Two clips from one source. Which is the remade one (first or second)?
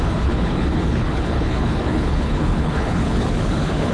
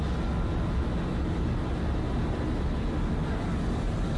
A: first